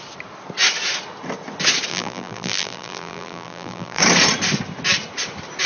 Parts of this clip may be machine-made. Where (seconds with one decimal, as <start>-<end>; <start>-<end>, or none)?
1.9-4.0